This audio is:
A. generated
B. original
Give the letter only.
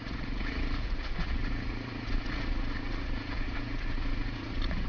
A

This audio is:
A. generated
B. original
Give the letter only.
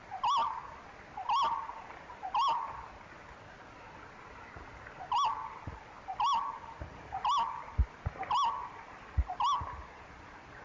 B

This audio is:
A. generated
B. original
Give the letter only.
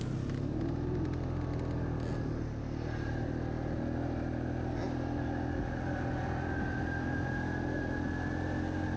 B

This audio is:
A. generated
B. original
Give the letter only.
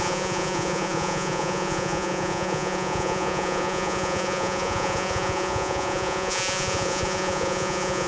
A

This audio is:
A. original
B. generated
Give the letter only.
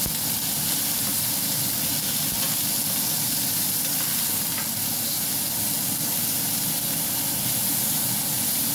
A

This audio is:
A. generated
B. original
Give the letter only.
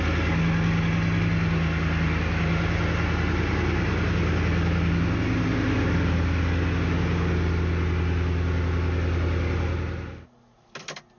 B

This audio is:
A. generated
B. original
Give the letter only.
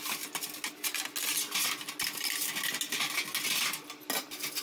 B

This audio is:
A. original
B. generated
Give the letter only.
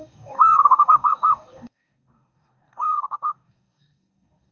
B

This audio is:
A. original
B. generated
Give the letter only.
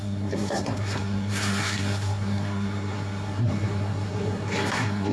B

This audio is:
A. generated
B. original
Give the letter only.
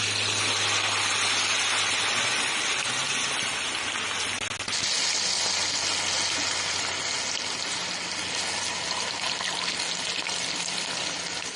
B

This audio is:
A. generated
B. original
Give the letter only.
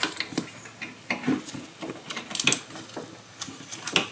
B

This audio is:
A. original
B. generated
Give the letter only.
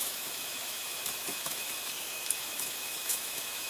B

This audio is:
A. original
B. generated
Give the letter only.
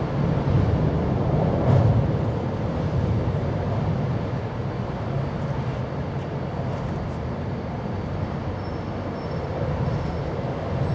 A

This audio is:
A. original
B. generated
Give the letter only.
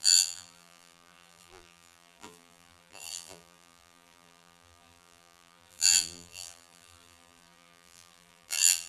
B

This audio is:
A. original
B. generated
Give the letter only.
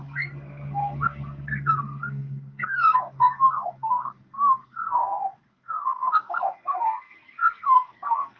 B